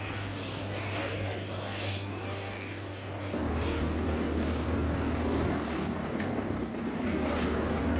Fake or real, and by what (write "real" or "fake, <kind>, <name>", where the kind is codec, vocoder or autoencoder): fake, codec, DAC